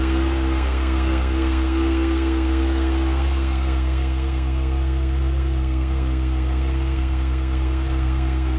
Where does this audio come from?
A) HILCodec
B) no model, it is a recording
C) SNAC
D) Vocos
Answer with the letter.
C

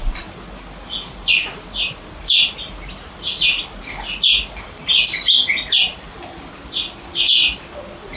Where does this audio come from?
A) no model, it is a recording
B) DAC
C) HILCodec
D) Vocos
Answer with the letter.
A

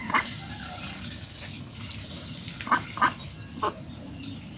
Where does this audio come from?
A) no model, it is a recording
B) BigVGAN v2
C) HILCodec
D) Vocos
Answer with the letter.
A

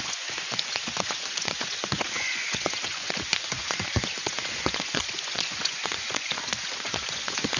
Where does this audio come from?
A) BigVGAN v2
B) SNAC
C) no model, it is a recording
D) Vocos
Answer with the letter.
D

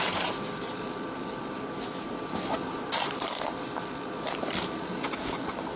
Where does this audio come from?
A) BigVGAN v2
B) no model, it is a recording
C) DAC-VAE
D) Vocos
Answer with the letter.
B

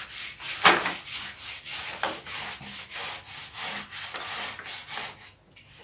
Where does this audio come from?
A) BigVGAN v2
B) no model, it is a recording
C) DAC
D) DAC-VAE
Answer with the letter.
B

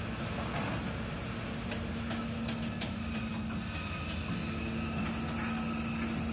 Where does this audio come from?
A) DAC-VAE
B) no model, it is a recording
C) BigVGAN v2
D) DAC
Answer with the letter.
B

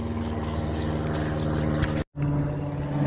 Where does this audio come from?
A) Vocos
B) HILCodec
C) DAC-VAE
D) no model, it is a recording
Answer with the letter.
D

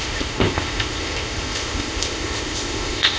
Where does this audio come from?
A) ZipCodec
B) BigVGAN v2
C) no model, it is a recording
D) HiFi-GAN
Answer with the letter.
A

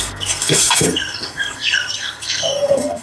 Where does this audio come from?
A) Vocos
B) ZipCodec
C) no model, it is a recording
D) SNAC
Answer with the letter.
D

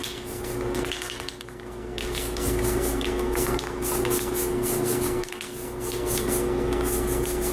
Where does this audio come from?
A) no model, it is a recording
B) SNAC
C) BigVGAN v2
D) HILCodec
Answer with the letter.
B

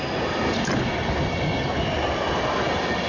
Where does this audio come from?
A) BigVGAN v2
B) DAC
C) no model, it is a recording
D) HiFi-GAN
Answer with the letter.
C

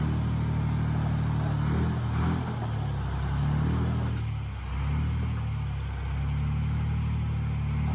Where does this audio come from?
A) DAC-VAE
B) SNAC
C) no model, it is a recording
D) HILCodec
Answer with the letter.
C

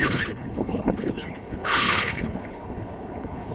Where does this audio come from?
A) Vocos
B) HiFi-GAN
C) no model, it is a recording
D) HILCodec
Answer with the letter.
D